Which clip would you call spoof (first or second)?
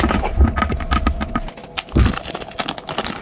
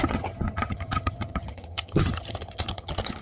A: second